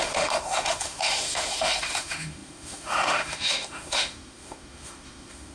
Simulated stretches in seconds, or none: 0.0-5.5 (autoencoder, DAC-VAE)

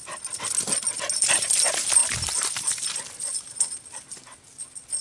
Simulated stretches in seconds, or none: none

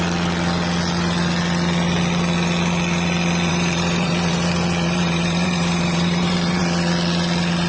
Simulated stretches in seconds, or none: 3.5-6.6 (vocoder, BigVGAN v2)